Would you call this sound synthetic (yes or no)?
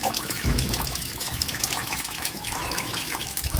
yes